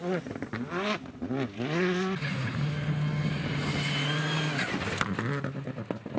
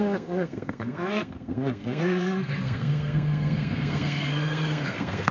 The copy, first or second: second